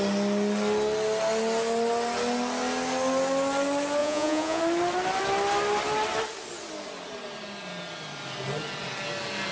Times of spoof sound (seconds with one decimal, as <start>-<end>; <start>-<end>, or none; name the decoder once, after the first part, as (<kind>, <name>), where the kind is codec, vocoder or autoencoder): 4.0-4.6 (vocoder, Vocos)